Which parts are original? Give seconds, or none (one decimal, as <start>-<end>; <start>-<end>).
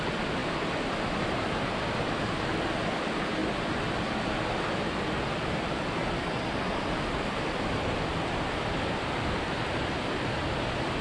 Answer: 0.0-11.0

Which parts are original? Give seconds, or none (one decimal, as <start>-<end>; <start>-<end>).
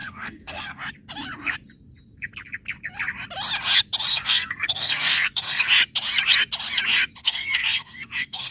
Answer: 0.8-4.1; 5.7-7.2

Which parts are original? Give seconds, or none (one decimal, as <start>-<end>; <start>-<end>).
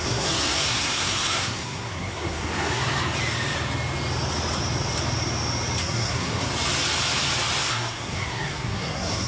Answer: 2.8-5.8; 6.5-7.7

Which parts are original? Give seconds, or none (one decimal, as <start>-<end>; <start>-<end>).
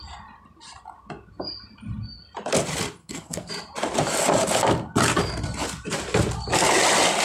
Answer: 0.0-3.0; 3.5-7.2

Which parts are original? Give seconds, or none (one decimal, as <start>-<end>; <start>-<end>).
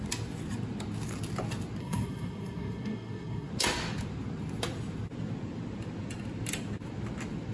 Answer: 0.0-1.8; 3.5-7.5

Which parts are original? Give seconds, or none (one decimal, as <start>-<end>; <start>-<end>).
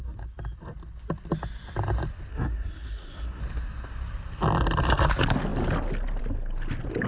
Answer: 0.0-2.3; 3.4-7.1